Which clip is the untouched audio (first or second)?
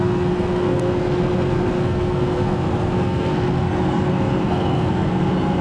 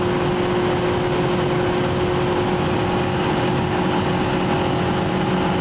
second